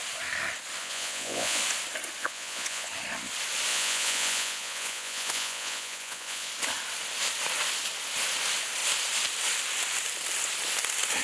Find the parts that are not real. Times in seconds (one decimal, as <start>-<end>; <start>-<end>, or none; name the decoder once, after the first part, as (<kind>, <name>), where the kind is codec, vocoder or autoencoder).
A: 0.8-1.6 (vocoder, Vocos); 2.2-2.9; 3.7-6.5